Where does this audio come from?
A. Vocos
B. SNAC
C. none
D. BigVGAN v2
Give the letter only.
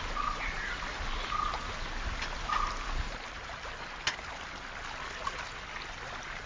C